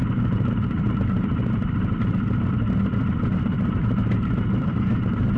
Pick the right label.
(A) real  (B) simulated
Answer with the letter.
B